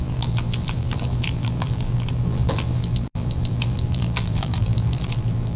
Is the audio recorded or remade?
remade